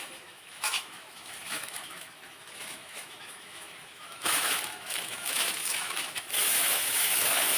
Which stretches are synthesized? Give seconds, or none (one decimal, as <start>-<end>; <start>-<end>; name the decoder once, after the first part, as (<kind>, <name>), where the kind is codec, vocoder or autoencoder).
0.0-7.6 (autoencoder, DAC-VAE)